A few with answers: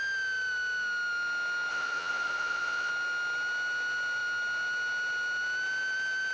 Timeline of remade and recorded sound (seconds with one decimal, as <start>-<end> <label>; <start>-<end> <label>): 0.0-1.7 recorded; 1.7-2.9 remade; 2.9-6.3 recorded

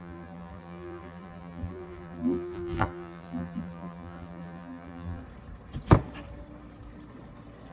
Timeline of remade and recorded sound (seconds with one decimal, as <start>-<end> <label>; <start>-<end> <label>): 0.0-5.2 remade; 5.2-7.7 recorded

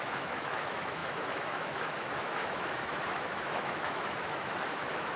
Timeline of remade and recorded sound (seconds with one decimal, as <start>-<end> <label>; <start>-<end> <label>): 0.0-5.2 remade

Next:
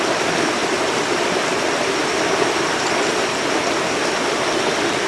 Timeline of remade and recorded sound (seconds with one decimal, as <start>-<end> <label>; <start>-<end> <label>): 0.0-5.1 recorded

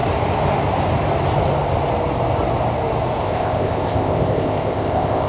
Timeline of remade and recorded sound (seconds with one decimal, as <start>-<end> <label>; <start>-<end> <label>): 0.0-3.2 recorded; 3.2-5.3 remade

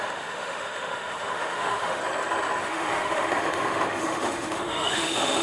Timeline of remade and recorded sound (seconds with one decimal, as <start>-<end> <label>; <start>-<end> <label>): 0.0-2.0 remade; 2.0-2.6 recorded; 2.6-5.4 remade